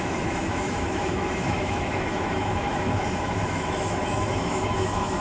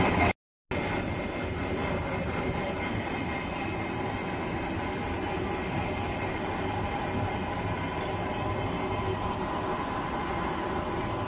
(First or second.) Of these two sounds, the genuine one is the second